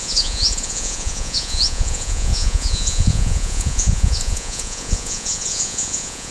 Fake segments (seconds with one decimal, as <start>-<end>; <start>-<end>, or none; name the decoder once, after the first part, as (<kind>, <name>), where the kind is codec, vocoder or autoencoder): 0.0-6.3 (vocoder, Vocos)